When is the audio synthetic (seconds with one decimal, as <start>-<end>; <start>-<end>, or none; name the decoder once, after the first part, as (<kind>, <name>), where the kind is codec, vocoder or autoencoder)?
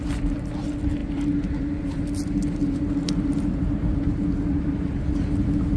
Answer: none